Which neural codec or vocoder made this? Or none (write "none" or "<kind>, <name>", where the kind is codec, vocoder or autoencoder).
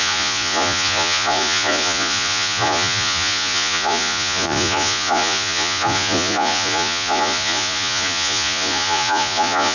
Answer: vocoder, Vocos